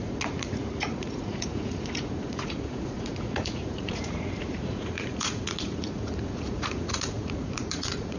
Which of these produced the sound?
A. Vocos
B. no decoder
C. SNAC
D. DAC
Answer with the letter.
A